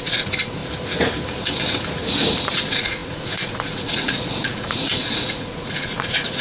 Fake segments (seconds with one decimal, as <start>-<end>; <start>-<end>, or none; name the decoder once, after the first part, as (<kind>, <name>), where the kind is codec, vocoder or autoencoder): 0.0-0.6 (vocoder, Vocos); 2.5-6.4